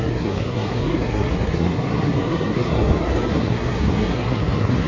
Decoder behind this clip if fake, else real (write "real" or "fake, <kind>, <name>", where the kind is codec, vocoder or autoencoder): fake, codec, SNAC